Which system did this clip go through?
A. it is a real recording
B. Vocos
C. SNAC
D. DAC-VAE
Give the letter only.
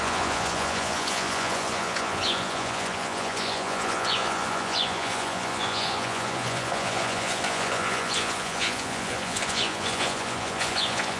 B